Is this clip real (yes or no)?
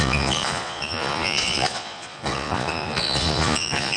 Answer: no